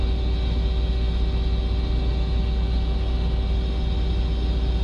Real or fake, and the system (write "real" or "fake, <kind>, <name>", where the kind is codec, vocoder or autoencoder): real